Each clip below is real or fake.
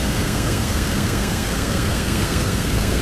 fake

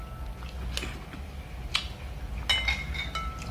real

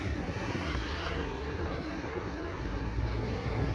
fake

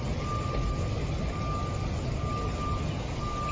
real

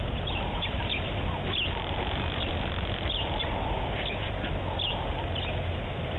real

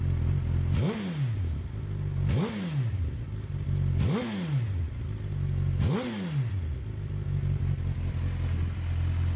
real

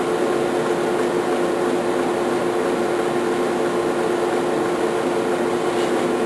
real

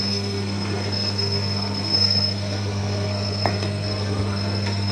fake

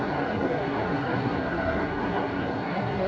fake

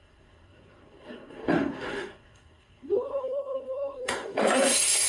fake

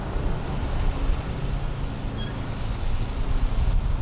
real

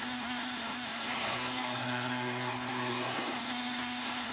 fake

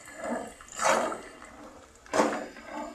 real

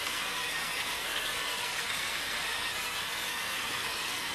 fake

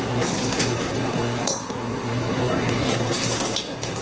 fake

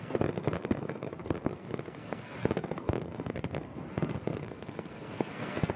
fake